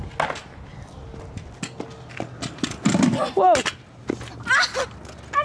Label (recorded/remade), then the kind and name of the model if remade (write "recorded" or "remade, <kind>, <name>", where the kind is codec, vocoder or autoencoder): recorded